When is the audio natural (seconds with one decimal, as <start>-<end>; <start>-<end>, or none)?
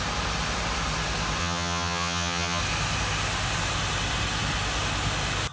0.0-1.4; 2.6-5.5